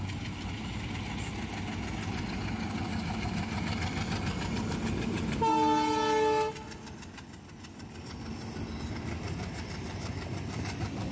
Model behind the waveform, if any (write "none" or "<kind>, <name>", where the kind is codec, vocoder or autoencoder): none